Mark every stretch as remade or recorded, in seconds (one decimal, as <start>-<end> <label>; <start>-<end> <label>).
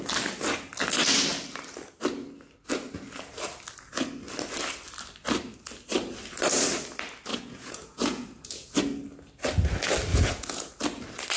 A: 0.0-7.3 recorded; 7.3-8.8 remade; 8.8-10.1 recorded; 10.1-10.7 remade; 10.7-11.4 recorded